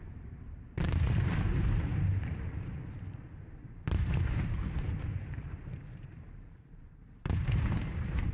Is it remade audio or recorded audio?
remade